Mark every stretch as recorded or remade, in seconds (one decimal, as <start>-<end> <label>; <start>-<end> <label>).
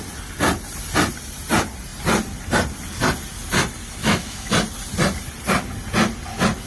0.0-4.0 recorded; 4.0-4.5 remade; 4.5-6.7 recorded